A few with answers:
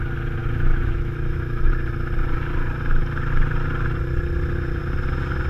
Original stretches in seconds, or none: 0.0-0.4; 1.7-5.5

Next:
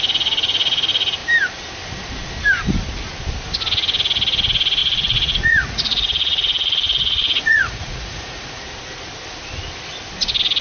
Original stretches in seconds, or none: 0.0-4.8; 8.6-10.6

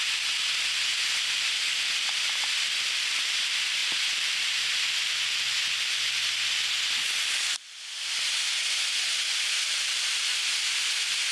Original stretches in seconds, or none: 0.0-11.3

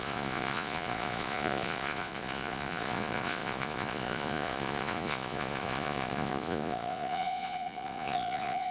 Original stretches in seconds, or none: none